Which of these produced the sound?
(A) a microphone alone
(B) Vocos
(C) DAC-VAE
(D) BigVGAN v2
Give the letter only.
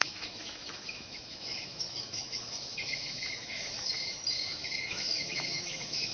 C